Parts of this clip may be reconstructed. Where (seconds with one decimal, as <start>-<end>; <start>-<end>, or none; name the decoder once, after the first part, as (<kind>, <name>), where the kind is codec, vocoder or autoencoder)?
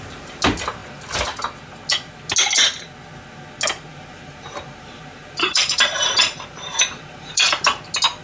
3.9-7.6 (vocoder, BigVGAN v2)